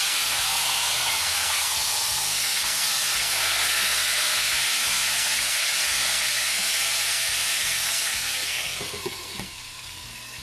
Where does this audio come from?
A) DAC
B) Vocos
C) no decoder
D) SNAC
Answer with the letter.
D